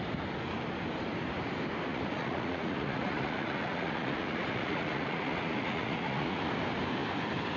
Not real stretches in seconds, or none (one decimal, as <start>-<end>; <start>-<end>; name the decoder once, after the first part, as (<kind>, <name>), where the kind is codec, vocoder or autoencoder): 1.9-6.5 (vocoder, Vocos)